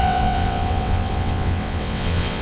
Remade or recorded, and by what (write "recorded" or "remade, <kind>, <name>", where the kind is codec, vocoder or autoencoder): remade, vocoder, WaveNeXt